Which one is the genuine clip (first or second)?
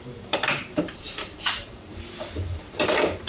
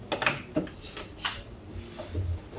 second